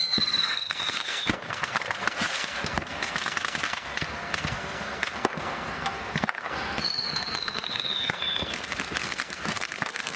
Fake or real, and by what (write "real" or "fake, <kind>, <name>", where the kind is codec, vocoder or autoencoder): fake, codec, SNAC